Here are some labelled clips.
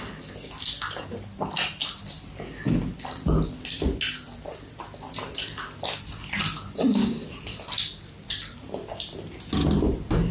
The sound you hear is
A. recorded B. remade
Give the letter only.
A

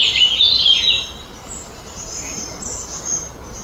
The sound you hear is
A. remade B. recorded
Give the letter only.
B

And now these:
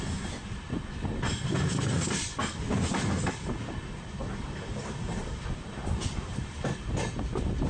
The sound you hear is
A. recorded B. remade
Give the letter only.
A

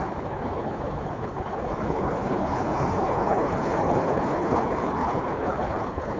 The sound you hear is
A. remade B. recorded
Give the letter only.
A